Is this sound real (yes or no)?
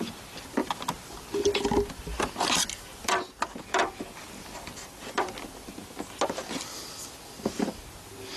yes